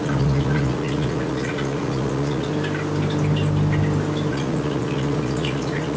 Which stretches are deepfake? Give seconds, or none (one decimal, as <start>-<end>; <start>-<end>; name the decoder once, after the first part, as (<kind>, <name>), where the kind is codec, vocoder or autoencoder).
0.0-2.5 (vocoder, Vocos); 4.3-6.0